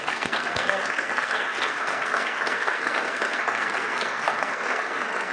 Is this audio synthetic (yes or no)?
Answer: yes